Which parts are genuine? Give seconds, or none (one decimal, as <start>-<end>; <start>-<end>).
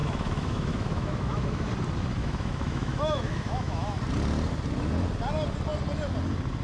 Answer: 1.7-2.2; 4.0-6.6